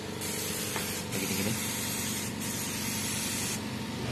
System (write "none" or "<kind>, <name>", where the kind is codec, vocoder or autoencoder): none